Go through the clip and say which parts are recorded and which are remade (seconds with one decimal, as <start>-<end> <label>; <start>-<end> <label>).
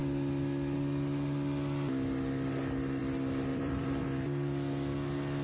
0.0-3.5 recorded; 3.5-4.0 remade; 4.0-5.4 recorded